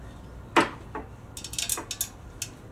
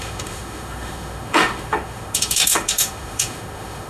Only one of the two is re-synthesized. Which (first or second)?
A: second